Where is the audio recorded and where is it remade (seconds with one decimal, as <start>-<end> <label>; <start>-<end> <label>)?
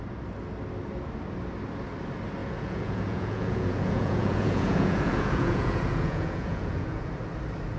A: 0.0-2.4 recorded; 2.4-7.1 remade; 7.1-7.8 recorded